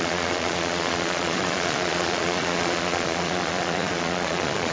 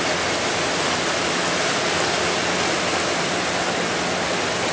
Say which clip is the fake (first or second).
first